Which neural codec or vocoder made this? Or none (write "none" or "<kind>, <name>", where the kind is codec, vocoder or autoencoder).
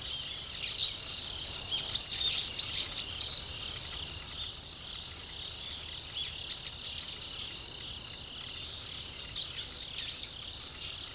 none